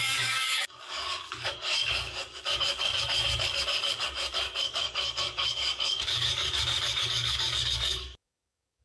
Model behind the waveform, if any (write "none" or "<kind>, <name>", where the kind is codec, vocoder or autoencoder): codec, DAC